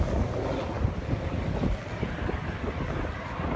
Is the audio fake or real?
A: real